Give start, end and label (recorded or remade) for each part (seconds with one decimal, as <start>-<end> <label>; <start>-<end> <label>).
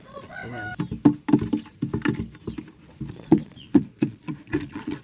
0.0-0.4 remade; 0.4-3.1 recorded; 3.1-5.0 remade